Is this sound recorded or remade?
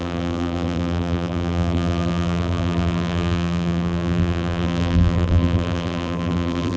remade